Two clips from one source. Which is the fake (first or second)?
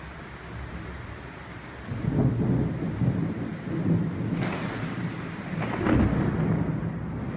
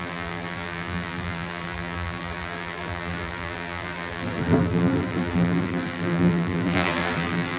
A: second